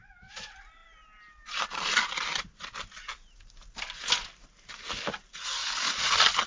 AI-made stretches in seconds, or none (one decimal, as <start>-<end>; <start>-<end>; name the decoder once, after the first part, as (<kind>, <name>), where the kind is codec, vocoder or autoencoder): none